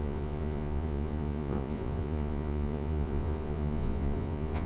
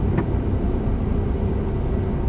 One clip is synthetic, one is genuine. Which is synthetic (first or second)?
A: first